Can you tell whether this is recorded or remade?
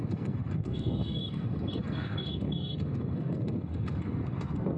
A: remade